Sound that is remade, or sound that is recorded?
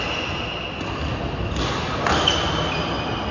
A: recorded